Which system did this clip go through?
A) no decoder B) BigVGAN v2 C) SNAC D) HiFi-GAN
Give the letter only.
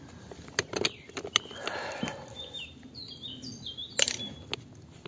A